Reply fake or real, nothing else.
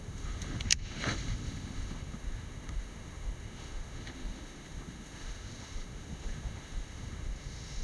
fake